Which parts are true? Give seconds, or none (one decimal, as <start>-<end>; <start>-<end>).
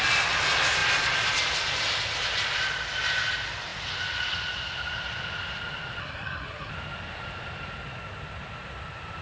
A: 0.0-6.0; 6.7-9.2